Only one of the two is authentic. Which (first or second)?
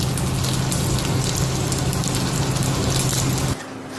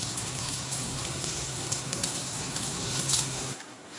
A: first